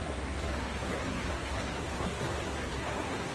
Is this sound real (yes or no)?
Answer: no